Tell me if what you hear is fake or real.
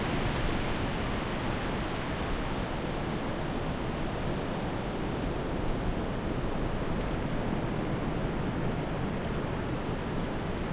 real